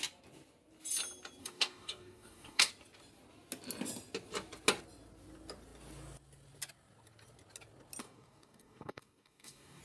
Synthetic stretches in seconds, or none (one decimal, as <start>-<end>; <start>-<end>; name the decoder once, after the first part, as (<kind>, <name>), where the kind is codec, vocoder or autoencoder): 1.4-2.7 (codec, DAC); 8.0-9.8

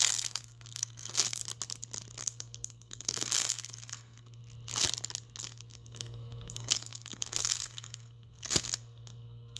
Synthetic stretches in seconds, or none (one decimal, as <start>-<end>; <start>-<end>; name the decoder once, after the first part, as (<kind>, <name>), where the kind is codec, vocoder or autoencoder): 0.0-1.4 (codec, SNAC); 2.2-4.4; 5.4-9.6

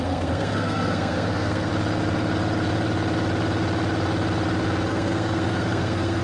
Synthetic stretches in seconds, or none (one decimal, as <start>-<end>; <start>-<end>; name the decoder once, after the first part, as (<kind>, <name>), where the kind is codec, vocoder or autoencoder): 0.0-1.7 (codec, SNAC); 4.9-6.2

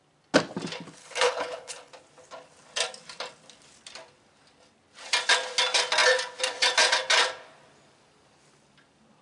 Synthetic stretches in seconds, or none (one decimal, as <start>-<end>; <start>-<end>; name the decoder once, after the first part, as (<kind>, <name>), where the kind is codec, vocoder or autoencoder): 1.0-1.9 (codec, HILCodec)

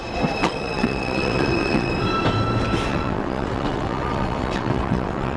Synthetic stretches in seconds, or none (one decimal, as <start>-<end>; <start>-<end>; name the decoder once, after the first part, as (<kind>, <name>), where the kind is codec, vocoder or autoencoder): 0.4-1.9 (vocoder, WaveNeXt); 2.9-5.4

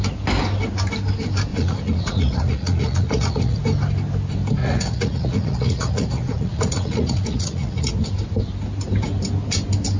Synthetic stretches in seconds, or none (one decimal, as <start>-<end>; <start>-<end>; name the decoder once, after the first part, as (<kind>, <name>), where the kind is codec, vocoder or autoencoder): 1.5-3.6 (vocoder, Vocos); 4.6-7.9

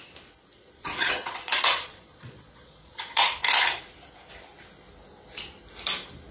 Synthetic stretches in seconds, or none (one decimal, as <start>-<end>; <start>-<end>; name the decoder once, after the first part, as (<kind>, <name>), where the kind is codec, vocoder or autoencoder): 0.6-3.3 (vocoder, Vocos)

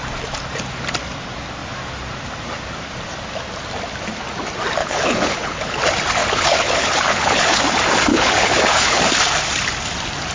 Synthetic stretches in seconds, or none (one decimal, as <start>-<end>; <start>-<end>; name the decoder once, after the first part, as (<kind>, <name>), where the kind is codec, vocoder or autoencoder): 4.8-5.8 (codec, HILCodec); 6.2-7.6; 8.1-9.0